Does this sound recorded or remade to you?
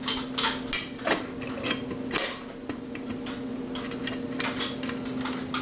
recorded